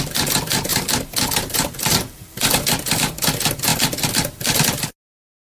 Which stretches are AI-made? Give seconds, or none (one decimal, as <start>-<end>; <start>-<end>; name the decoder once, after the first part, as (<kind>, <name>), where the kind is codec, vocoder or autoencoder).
0.7-2.5 (vocoder, BigVGAN v2)